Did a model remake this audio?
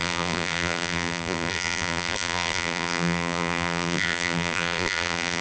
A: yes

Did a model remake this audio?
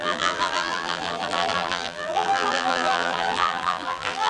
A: yes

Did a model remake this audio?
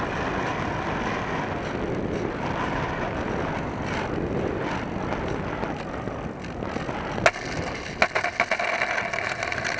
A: no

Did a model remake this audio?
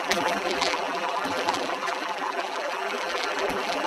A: yes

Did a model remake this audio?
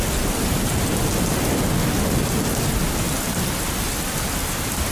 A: no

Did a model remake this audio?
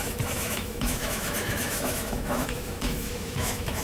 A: yes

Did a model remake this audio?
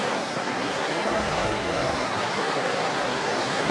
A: yes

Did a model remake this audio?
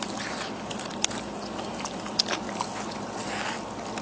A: no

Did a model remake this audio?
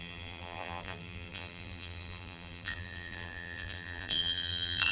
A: yes